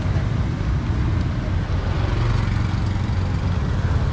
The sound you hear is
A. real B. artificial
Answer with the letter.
A